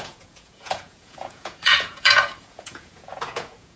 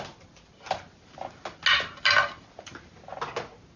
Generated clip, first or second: first